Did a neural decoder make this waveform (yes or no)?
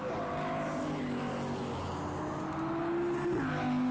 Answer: no